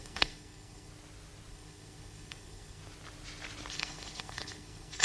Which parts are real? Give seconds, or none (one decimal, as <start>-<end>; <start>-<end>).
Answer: 0.9-1.5; 2.8-3.7